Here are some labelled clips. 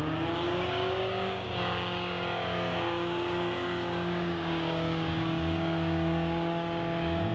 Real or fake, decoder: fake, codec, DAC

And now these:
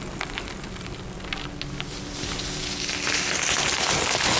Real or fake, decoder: real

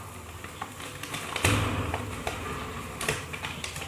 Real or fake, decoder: real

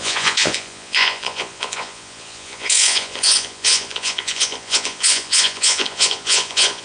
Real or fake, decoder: fake, vocoder, Vocos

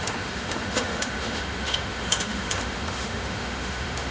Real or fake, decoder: fake, autoencoder, DAC-VAE